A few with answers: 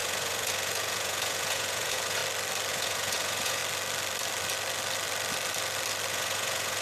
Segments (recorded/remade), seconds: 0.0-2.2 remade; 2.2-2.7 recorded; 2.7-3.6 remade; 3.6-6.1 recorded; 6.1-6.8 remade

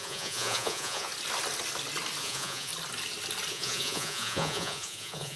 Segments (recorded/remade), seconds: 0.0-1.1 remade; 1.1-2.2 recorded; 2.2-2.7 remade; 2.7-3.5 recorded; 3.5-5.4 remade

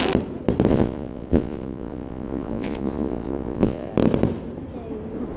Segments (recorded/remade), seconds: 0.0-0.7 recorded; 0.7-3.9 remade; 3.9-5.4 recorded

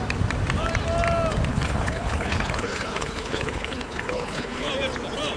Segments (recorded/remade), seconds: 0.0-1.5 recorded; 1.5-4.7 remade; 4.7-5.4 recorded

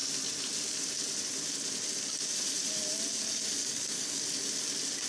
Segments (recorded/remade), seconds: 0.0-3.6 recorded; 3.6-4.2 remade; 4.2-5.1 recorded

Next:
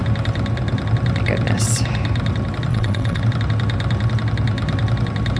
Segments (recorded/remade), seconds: 0.0-2.7 recorded; 2.7-3.2 remade; 3.2-5.4 recorded